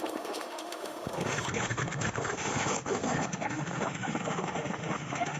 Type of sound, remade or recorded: remade